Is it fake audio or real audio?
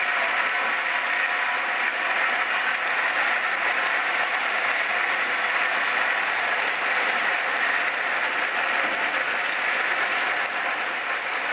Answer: real